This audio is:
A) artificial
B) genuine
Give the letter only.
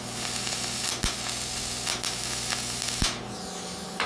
B